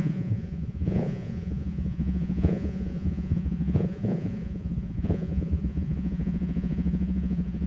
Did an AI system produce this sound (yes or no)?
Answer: yes